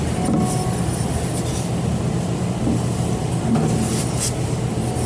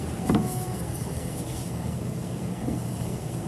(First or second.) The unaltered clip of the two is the first